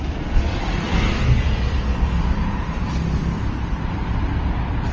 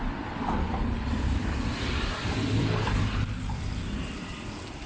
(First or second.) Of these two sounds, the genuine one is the first